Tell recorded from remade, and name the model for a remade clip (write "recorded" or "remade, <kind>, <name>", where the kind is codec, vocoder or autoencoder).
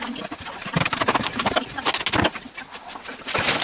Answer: recorded